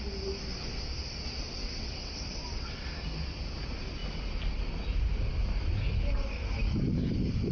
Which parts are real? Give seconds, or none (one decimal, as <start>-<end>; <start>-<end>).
0.0-1.6; 2.8-7.5

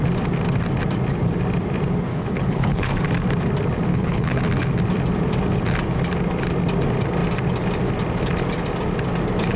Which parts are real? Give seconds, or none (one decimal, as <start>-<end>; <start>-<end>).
0.0-2.1; 2.9-3.9; 4.4-9.6

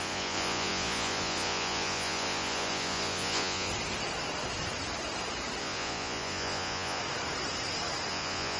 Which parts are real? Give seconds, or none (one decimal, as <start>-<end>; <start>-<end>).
3.7-5.6; 7.0-8.1

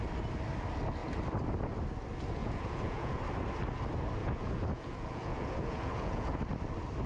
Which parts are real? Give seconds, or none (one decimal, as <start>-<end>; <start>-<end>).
0.0-2.4; 3.1-4.2; 6.4-7.1

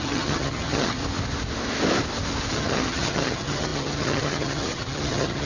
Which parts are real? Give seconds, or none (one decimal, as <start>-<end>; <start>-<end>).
1.0-2.5

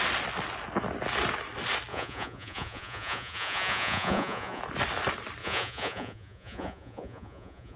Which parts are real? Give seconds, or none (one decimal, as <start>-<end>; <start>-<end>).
0.0-1.9; 4.6-5.4